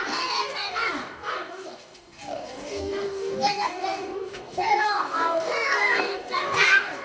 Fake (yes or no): yes